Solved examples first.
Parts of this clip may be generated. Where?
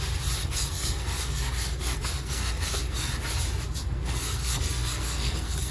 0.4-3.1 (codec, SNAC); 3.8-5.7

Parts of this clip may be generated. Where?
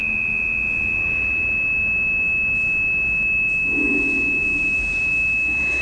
4.4-5.1 (vocoder, BigVGAN v2)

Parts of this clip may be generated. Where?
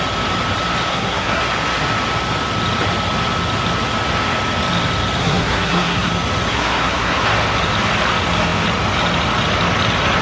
0.9-1.4 (codec, SNAC); 5.2-6.1; 6.5-7.2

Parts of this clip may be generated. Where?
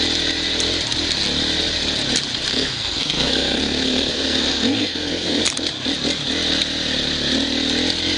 2.5-5.4 (codec, SNAC)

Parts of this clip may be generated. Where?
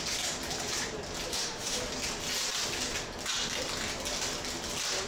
1.3-1.8 (autoencoder, DAC-VAE)